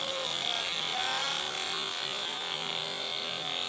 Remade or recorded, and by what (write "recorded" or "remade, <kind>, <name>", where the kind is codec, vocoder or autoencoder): recorded